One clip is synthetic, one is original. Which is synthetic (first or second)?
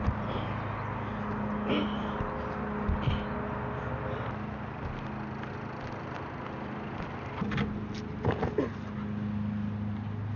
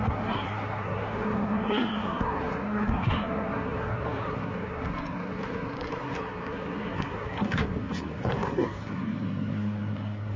second